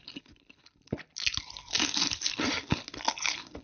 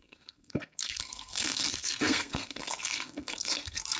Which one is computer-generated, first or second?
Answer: second